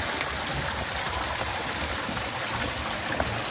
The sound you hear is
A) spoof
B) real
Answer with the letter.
B